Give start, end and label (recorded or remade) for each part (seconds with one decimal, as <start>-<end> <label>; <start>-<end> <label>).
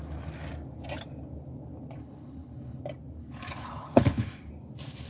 0.0-2.0 recorded; 2.0-2.8 remade; 2.8-3.2 recorded; 3.2-4.5 remade; 4.5-5.1 recorded